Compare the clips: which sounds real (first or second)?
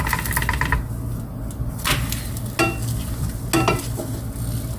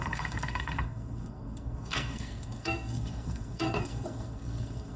first